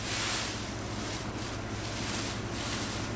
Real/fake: real